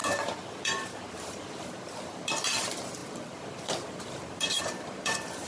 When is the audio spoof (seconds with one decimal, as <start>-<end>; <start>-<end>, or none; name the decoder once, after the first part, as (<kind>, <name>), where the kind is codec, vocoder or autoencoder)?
0.0-5.5 (vocoder, BigVGAN v2)